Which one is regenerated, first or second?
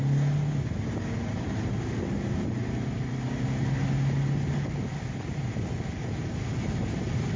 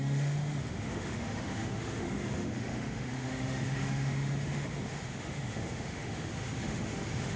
second